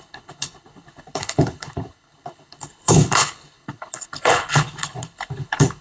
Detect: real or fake fake